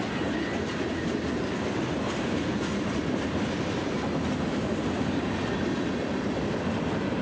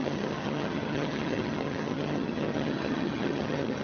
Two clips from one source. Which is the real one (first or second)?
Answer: first